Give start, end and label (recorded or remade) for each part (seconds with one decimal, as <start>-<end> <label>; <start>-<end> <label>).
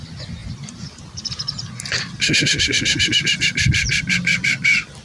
0.0-5.0 recorded